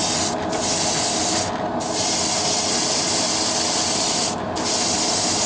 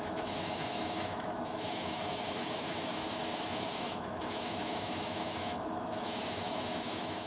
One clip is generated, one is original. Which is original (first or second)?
first